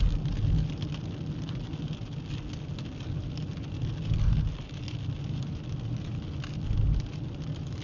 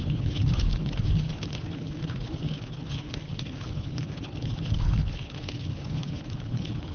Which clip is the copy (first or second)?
second